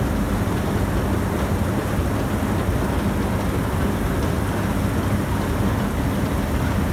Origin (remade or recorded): recorded